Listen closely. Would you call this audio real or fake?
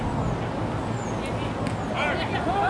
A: real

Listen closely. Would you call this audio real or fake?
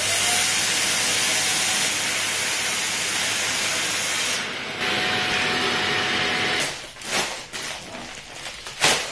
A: real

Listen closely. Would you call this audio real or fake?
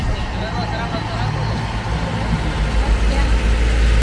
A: real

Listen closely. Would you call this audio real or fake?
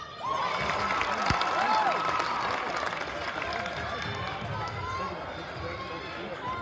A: real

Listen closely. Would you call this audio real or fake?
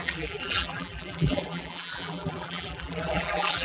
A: fake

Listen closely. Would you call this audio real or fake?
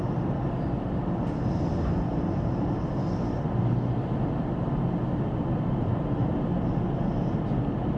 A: real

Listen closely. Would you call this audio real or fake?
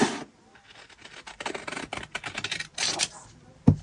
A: real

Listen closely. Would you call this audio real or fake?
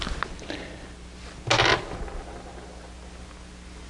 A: real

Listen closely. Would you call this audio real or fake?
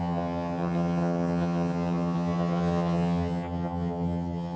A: fake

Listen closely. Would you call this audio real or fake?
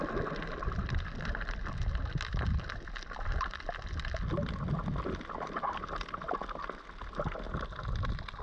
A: real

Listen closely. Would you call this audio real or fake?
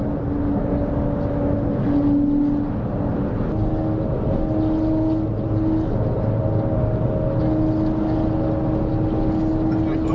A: real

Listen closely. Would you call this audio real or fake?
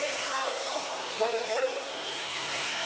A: fake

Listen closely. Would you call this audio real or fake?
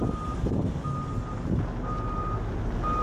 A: real